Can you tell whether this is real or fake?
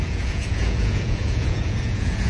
fake